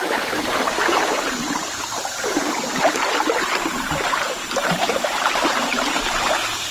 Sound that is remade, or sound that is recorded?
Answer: remade